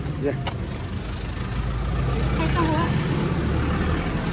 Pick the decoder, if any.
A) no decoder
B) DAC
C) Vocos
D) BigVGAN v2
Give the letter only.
A